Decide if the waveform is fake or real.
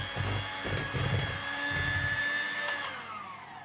real